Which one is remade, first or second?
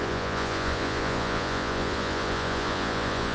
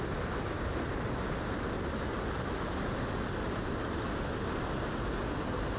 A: first